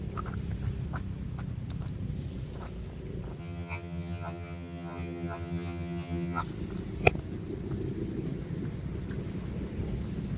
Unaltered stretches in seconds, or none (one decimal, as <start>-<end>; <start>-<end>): 0.0-3.4; 6.4-10.4